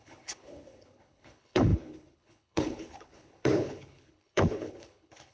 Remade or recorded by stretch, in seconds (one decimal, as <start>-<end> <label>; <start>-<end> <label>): 0.0-5.3 remade